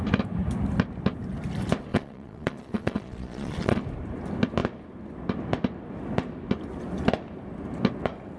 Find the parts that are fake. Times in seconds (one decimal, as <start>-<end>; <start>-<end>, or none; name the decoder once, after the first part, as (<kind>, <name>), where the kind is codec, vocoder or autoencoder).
1.9-3.8 (vocoder, Vocos)

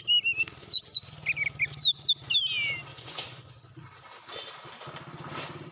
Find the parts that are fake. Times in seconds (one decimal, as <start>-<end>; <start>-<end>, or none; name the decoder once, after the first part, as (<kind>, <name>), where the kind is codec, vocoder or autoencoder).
0.6-1.1 (vocoder, Vocos); 2.9-3.5